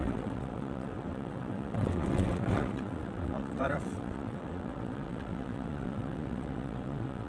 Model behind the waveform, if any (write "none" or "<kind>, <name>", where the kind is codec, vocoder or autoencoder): vocoder, WaveNeXt